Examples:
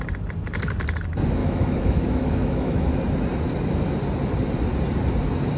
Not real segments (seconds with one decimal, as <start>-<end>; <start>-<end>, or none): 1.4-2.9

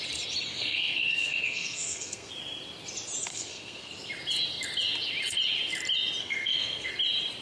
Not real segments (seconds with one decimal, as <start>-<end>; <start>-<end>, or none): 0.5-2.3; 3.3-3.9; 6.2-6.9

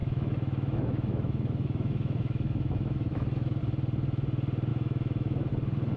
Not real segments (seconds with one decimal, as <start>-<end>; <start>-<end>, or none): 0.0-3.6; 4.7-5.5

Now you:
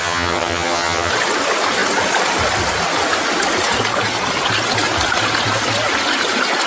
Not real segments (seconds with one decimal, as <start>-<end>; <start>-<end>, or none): 0.0-1.1

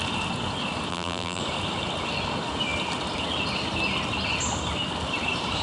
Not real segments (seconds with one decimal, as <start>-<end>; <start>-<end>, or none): 0.9-1.4

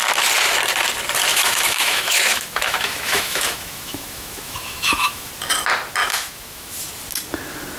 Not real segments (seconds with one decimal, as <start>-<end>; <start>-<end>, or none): 1.3-5.3; 6.0-6.8

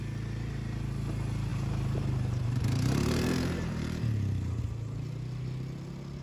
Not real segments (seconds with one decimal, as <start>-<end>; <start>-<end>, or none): 1.5-4.6